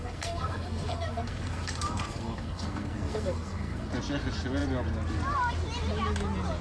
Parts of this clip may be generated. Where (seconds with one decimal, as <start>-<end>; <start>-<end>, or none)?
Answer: 0.0-3.9